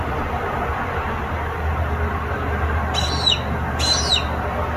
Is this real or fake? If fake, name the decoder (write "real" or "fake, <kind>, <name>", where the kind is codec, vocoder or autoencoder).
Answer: real